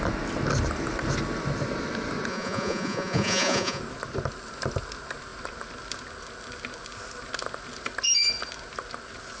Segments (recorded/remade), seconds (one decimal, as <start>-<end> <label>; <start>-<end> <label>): 0.0-2.3 recorded; 2.3-3.8 remade; 3.8-9.4 recorded